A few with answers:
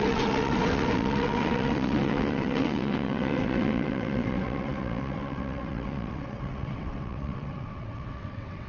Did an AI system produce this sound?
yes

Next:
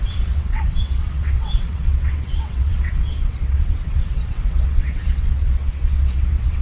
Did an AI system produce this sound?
yes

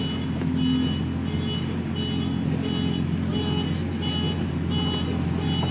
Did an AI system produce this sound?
no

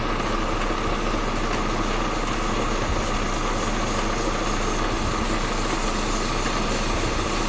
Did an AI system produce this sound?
no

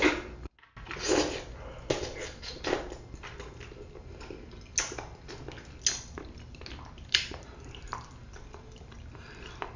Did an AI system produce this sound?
no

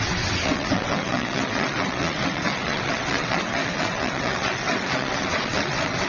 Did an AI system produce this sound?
yes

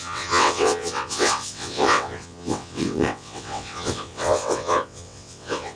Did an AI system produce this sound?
yes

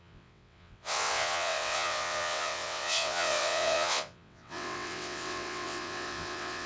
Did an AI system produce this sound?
yes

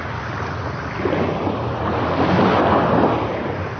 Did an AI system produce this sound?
no